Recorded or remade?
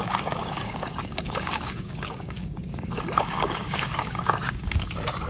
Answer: remade